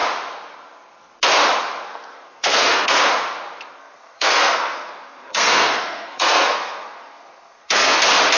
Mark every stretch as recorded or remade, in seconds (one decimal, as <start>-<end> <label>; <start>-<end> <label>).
0.0-1.9 recorded; 1.9-3.0 remade; 3.0-3.8 recorded; 3.8-8.0 remade; 8.0-8.4 recorded